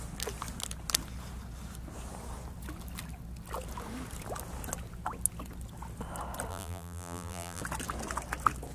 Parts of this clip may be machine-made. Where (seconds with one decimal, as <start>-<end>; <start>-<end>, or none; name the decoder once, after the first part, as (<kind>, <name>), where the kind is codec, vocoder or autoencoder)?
6.5-7.6 (vocoder, BigVGAN v2)